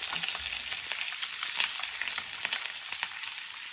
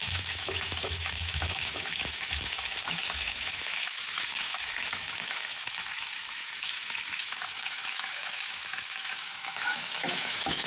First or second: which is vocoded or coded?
second